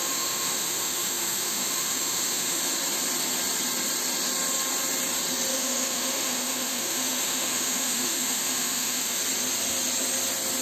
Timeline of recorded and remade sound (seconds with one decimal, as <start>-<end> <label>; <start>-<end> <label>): 0.0-2.6 remade; 2.6-5.5 recorded; 5.5-9.2 remade; 9.2-10.6 recorded